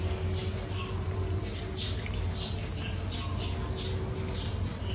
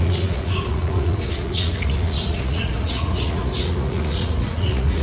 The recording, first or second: first